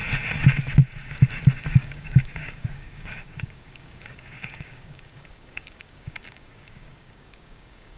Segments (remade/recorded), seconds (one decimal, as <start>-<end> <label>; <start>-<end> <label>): 0.0-1.6 recorded; 1.6-8.0 remade